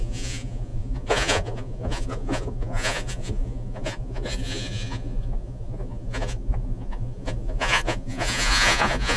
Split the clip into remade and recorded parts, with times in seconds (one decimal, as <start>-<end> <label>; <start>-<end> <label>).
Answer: 0.0-9.2 remade